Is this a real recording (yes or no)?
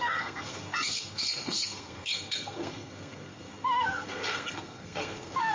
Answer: no